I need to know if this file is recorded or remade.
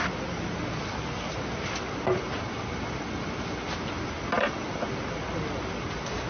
recorded